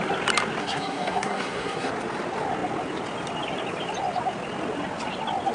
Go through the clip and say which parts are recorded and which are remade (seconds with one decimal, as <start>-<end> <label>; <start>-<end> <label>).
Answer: 0.0-0.6 recorded; 0.6-1.9 remade; 1.9-5.5 recorded

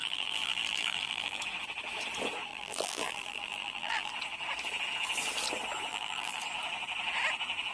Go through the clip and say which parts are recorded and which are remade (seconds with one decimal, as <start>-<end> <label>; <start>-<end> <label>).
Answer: 0.0-1.4 remade; 1.4-2.5 recorded; 2.5-4.1 remade; 4.1-5.9 recorded; 5.9-6.4 remade; 6.4-7.7 recorded

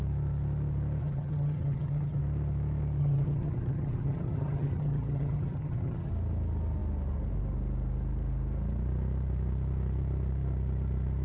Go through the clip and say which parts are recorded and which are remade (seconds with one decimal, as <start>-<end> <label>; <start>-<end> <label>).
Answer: 0.0-1.0 recorded; 1.0-2.2 remade; 2.2-3.0 recorded; 3.0-6.1 remade; 6.1-11.2 recorded

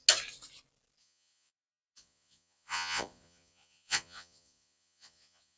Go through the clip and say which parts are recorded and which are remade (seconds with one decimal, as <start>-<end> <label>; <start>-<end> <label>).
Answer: 0.0-1.0 recorded; 1.0-5.6 remade

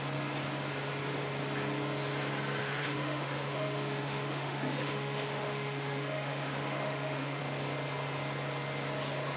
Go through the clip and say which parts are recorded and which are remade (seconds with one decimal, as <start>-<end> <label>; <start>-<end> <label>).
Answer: 0.0-2.6 recorded; 2.6-7.4 remade; 7.4-9.4 recorded